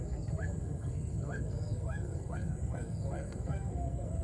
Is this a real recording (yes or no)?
no